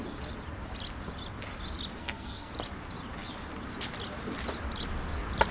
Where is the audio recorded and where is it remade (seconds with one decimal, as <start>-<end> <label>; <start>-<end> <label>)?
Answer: 0.0-2.0 recorded; 2.0-2.5 remade; 2.5-5.5 recorded